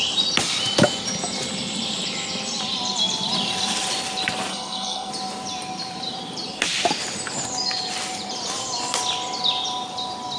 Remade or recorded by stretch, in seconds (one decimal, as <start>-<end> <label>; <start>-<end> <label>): 0.0-4.5 recorded; 4.5-5.1 remade; 5.1-10.4 recorded